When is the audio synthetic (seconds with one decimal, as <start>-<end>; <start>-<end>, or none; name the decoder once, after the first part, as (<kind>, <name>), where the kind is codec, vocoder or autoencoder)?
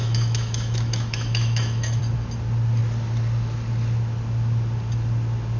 0.0-2.0 (autoencoder, DAC-VAE)